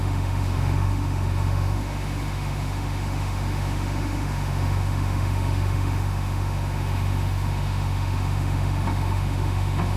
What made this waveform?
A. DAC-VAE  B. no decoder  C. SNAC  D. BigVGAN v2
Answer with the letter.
A